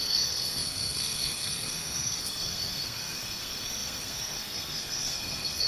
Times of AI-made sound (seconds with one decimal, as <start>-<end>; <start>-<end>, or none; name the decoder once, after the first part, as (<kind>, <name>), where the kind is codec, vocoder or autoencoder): 0.0-5.7 (codec, SNAC)